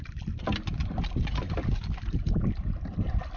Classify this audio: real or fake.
real